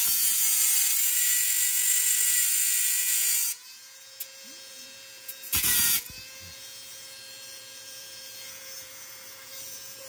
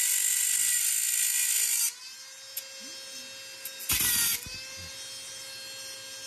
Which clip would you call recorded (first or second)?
second